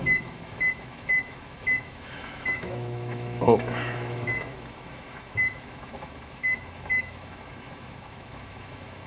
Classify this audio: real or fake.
fake